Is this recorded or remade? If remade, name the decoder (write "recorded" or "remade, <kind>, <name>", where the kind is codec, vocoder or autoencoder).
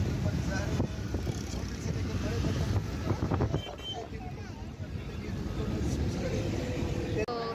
recorded